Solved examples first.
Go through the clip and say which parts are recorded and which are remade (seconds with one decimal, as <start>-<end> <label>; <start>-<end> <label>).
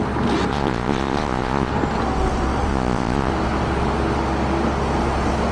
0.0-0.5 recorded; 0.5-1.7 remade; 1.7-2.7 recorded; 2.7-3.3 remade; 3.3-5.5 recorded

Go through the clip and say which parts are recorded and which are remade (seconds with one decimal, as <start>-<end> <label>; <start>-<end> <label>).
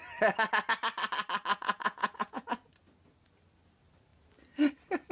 0.0-1.5 recorded; 1.5-2.7 remade; 2.7-5.1 recorded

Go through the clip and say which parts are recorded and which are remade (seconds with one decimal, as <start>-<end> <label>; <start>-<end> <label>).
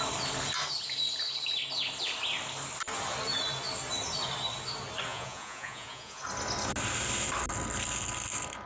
0.0-5.1 recorded; 5.1-6.2 remade; 6.2-8.7 recorded